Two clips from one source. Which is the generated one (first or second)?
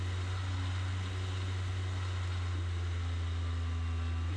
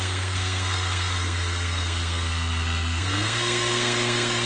second